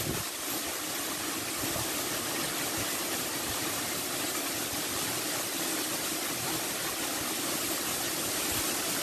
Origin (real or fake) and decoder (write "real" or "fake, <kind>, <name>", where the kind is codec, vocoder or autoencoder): real